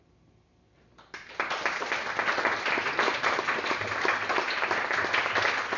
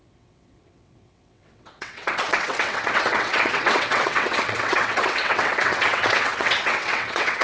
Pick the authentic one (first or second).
first